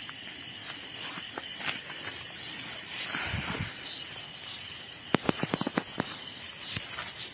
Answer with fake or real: real